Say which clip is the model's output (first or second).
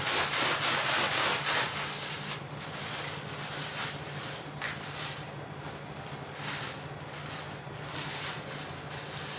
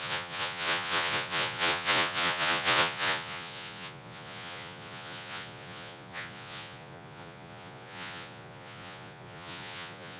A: second